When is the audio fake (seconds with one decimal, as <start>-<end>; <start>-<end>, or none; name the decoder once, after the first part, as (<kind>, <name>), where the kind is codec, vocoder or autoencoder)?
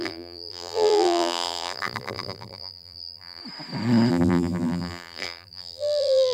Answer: 0.0-3.4 (vocoder, BigVGAN v2); 4.1-6.3